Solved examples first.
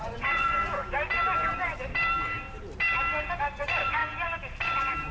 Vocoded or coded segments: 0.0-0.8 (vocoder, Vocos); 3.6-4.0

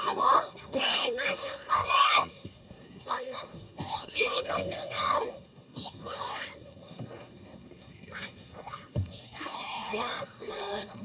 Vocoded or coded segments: 0.0-11.0 (codec, SNAC)

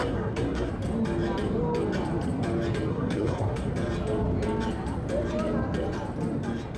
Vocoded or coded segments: 0.0-0.7 (codec, SNAC); 2.9-3.7